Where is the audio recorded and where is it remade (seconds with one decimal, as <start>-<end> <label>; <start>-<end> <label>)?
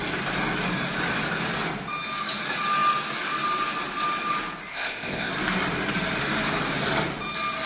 0.0-4.7 recorded; 4.7-5.3 remade; 5.3-7.7 recorded